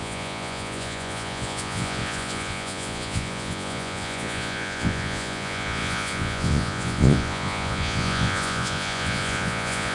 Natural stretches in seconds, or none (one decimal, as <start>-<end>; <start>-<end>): none